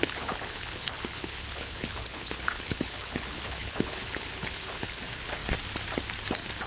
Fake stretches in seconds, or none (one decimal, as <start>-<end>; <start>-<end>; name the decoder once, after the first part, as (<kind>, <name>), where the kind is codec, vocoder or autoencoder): 0.0-5.4 (codec, HILCodec)